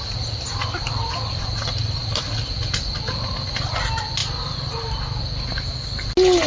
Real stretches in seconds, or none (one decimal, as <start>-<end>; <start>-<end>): 0.0-6.5